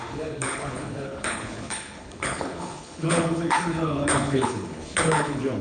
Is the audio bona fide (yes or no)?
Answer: no